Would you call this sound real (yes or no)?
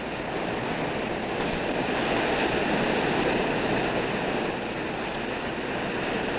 yes